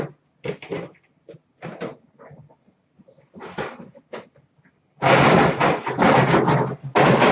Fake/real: real